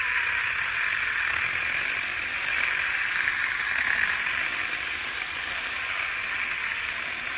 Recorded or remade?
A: recorded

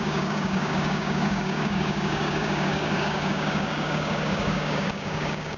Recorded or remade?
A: remade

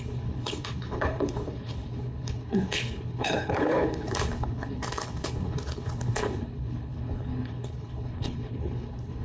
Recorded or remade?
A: remade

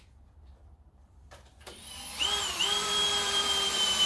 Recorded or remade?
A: remade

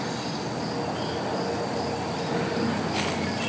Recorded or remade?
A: recorded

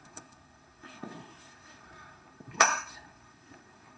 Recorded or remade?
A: remade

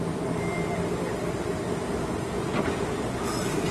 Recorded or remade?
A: recorded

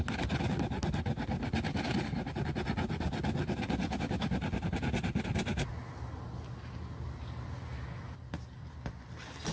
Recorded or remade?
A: recorded